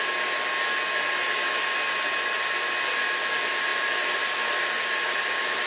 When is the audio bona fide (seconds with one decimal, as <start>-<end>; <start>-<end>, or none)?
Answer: 0.0-5.7